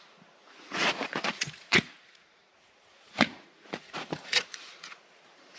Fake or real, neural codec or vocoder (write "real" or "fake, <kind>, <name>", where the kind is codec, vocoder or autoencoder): fake, vocoder, Vocos